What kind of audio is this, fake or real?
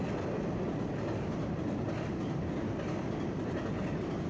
real